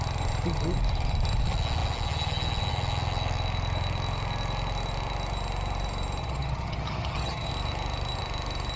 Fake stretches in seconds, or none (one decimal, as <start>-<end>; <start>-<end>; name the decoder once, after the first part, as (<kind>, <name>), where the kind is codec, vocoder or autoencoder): 6.2-7.5 (vocoder, HiFi-GAN)